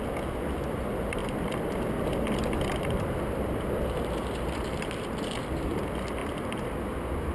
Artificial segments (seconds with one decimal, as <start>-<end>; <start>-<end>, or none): 1.2-4.9; 6.2-6.8